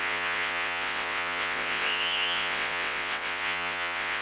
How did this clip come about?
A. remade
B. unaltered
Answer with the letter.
A